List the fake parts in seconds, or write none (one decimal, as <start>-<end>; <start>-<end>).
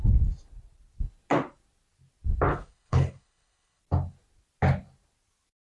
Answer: 2.5-3.8